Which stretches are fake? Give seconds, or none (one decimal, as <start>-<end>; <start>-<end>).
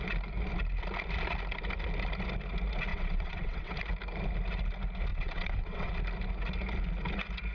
2.9-3.7; 5.1-5.9